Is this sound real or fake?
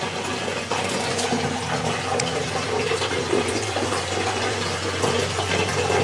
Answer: fake